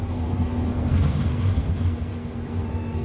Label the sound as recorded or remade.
remade